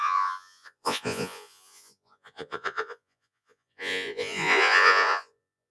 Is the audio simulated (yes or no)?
yes